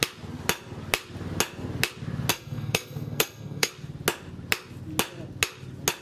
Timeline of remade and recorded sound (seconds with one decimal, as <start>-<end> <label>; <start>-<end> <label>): 0.0-2.3 recorded; 2.3-3.7 remade; 3.7-6.0 recorded